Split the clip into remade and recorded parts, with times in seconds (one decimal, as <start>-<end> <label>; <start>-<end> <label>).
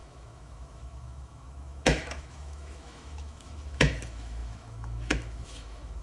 0.0-6.0 remade